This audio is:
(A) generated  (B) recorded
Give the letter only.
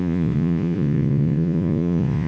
A